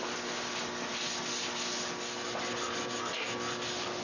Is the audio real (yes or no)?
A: yes